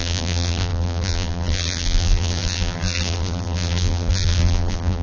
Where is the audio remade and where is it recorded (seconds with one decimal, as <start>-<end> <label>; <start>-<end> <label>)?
0.0-5.0 remade